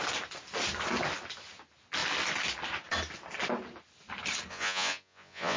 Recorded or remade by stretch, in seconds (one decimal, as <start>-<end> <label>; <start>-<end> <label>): 0.0-4.5 recorded; 4.5-5.6 remade